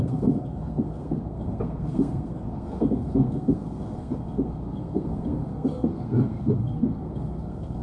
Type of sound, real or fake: fake